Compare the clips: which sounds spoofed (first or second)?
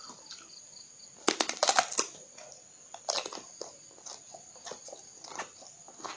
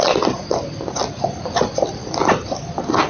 second